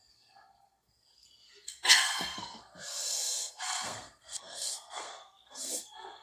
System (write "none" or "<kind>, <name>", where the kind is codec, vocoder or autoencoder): codec, SNAC